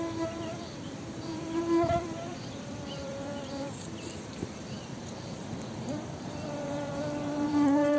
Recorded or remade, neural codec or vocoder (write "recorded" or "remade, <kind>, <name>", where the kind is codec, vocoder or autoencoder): remade, vocoder, BigVGAN v2